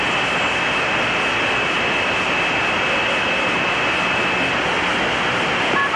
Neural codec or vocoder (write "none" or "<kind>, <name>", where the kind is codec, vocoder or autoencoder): none